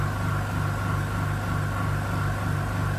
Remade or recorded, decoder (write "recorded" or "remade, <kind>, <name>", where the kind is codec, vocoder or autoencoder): recorded